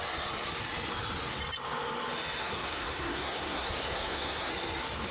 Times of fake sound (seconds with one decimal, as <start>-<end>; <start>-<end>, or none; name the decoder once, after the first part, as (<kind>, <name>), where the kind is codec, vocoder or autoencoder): 2.4-4.5 (codec, SNAC)